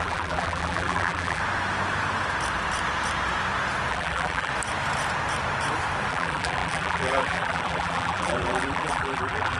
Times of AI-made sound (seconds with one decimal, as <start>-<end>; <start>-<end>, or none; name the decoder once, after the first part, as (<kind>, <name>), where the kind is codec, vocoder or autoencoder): 0.0-1.4 (vocoder, BigVGAN v2); 3.9-4.5; 6.1-9.6